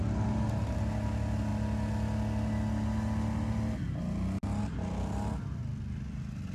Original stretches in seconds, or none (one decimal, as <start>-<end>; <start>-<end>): 0.0-6.5